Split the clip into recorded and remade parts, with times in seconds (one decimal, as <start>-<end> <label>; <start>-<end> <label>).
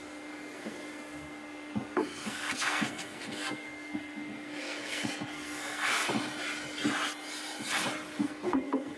0.0-6.0 remade; 6.0-8.2 recorded; 8.2-9.0 remade